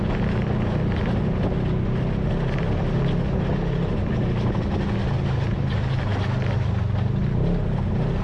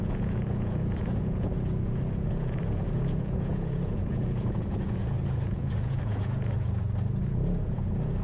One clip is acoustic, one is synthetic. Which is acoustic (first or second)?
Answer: first